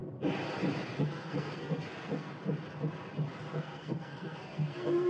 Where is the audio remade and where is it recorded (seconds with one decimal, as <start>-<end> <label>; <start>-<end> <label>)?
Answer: 0.0-1.0 recorded; 1.0-2.3 remade; 2.3-3.5 recorded; 3.5-5.1 remade